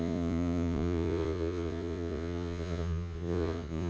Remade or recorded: remade